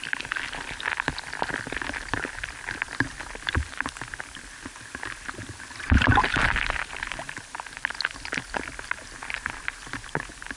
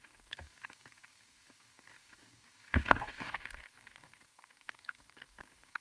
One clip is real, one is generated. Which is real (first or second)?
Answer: first